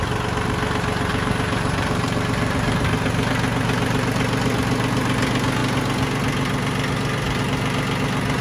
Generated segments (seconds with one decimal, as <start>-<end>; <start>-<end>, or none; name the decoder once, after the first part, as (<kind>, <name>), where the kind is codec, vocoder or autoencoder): 1.1-3.3 (vocoder, BigVGAN v2)